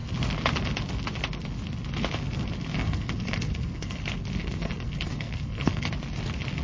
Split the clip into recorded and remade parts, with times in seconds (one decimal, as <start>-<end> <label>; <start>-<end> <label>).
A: 0.0-2.7 recorded; 2.7-4.0 remade; 4.0-4.4 recorded; 4.4-5.9 remade; 5.9-6.6 recorded